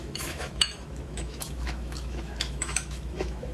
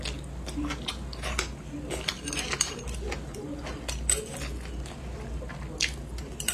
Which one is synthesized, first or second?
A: first